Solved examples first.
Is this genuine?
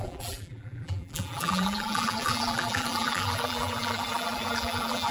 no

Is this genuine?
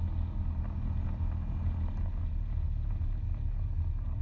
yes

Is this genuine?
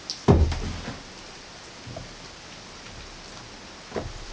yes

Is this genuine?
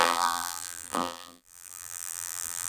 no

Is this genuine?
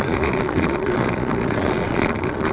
no